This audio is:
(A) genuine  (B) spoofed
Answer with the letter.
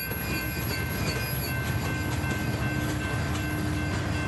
A